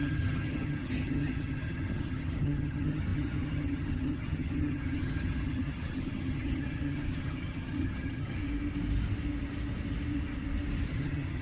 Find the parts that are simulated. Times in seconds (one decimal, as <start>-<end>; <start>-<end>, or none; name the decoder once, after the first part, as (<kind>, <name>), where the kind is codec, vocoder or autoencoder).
0.0-8.4 (vocoder, HiFi-GAN); 10.9-11.4